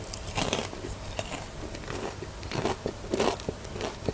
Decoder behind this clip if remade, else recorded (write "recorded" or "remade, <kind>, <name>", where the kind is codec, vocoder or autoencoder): recorded